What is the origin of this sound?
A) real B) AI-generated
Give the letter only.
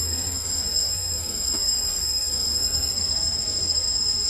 B